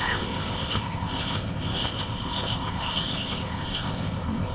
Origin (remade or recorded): remade